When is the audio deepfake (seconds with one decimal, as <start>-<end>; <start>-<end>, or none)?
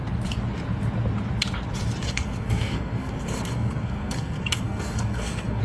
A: 2.0-5.6